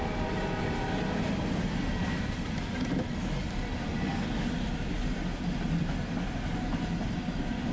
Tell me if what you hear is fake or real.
real